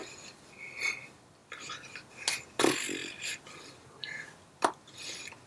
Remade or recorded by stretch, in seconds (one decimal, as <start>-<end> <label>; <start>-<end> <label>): 0.0-1.4 recorded; 1.4-2.1 remade; 2.1-3.0 recorded; 3.0-4.7 remade; 4.7-5.5 recorded